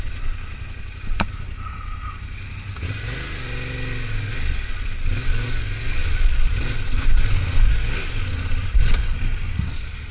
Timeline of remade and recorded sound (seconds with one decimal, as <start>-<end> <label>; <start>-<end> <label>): 0.0-6.0 recorded; 6.0-7.2 remade; 7.2-10.1 recorded